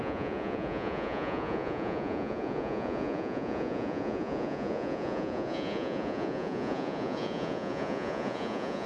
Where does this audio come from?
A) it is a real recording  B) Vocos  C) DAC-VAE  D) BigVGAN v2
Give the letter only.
B